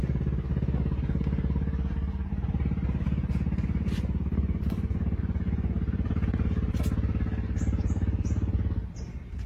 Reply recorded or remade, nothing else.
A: recorded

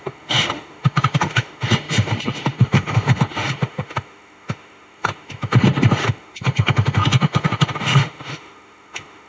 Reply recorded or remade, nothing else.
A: remade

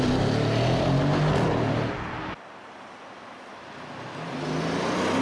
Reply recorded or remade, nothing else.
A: recorded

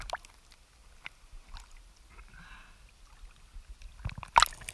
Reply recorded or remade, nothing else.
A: recorded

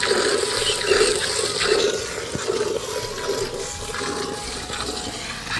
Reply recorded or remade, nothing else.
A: recorded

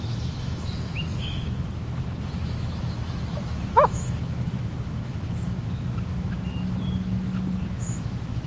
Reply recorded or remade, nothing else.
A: remade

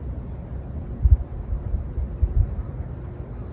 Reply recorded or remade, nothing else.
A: recorded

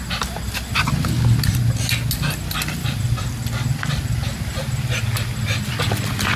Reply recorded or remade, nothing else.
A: recorded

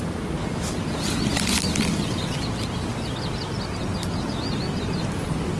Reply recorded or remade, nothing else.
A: recorded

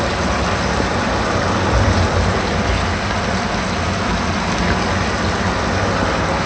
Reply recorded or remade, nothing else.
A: recorded